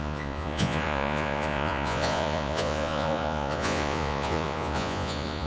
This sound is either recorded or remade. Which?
remade